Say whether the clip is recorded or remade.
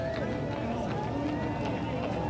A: recorded